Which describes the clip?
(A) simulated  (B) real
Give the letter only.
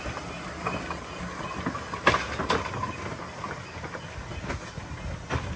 B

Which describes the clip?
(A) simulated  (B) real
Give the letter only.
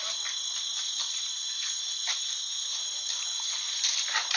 B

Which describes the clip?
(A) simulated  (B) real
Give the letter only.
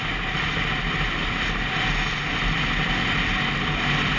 B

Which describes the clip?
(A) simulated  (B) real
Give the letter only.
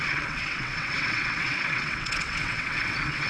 A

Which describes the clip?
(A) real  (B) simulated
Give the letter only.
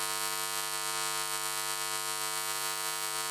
A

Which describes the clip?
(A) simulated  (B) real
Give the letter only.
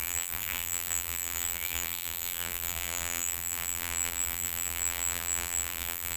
A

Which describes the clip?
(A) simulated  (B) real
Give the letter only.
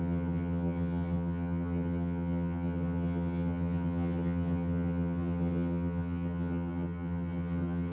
A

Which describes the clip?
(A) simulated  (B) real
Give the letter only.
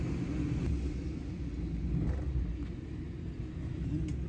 B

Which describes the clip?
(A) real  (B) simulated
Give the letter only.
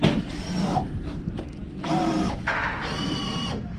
B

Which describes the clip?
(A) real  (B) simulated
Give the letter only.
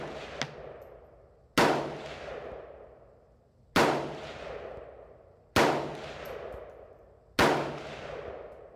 A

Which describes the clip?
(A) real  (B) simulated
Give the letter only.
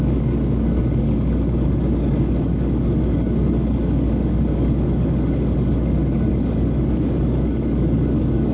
B